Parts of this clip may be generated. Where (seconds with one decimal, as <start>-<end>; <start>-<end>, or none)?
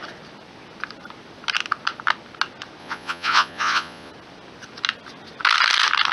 2.8-4.1